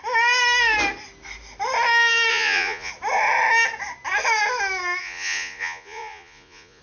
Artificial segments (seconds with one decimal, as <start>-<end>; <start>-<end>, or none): 2.3-2.9; 5.0-6.8